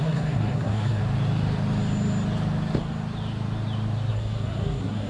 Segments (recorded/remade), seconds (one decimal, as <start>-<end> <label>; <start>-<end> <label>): 0.0-1.0 remade; 1.0-4.1 recorded; 4.1-5.1 remade